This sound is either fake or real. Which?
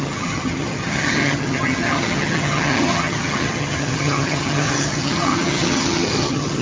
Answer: fake